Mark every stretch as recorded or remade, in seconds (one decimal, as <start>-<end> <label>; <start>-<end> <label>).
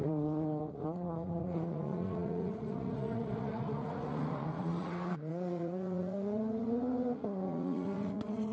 0.0-8.5 remade